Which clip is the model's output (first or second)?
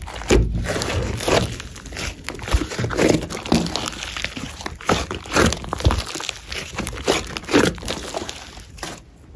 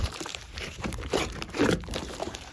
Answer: second